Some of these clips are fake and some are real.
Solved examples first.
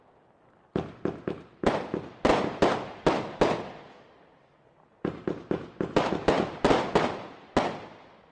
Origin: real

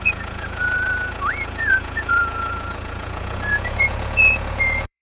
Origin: fake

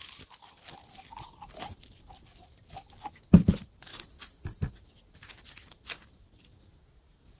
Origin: real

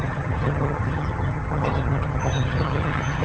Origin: fake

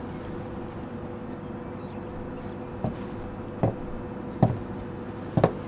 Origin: real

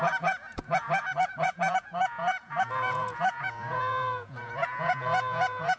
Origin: fake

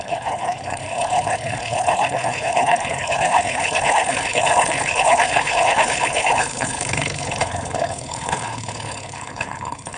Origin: fake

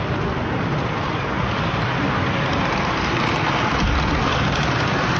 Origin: real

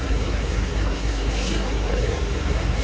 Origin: fake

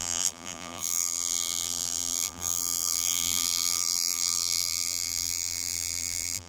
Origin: fake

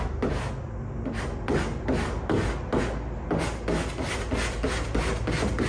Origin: real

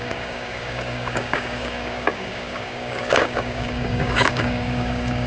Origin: fake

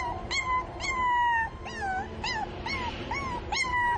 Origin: real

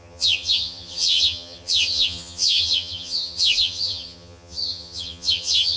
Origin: fake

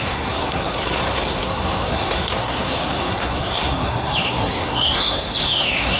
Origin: fake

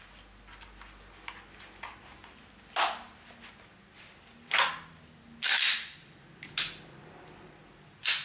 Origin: real